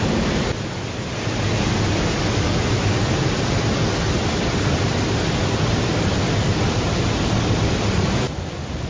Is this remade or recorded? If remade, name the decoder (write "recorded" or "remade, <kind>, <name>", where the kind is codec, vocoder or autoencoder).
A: recorded